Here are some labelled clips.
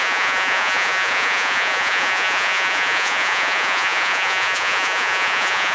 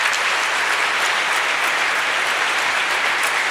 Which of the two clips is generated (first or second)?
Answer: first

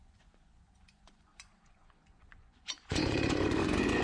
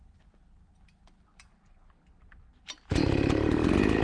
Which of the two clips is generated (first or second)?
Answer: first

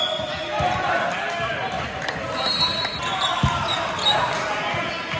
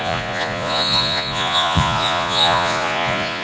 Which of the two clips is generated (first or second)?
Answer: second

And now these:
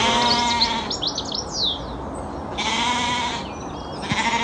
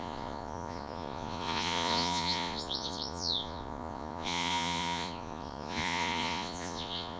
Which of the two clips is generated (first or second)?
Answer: second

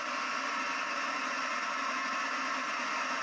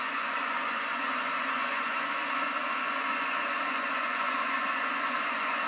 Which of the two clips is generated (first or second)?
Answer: second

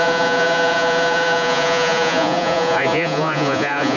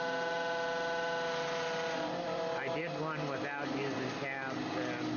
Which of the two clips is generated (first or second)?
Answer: first